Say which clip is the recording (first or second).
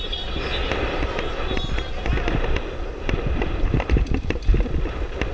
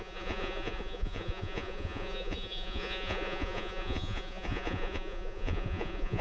first